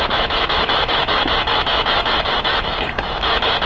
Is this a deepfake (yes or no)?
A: yes